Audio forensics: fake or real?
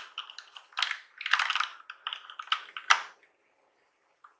real